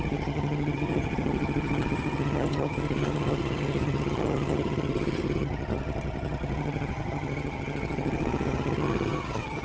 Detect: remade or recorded remade